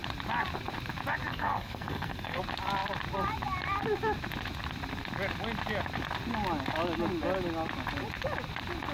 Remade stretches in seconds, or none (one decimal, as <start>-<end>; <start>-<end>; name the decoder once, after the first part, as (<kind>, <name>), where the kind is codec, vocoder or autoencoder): 1.3-2.4 (codec, SNAC)